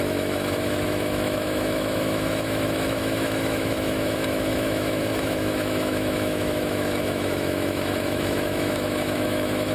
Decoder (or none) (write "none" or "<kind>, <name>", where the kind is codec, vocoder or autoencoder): autoencoder, DAC-VAE